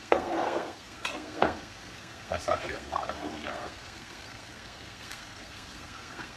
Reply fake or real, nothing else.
fake